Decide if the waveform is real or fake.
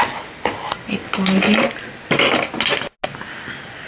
real